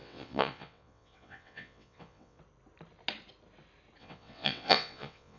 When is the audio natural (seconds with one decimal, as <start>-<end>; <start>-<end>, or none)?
2.4-4.0